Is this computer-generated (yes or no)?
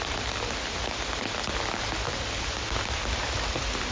yes